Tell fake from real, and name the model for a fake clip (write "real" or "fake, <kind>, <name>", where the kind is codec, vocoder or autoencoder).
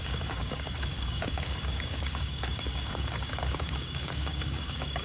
fake, codec, DAC